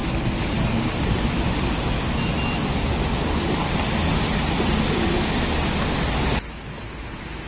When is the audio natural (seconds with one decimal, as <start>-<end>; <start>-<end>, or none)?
0.0-7.5